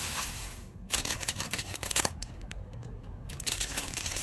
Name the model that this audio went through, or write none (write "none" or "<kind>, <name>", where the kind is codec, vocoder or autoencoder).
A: codec, SNAC